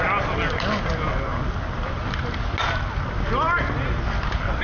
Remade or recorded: recorded